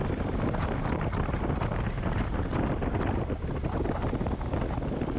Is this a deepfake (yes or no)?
no